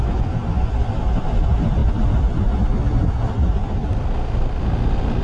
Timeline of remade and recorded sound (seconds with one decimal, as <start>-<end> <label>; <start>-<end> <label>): 0.0-5.2 recorded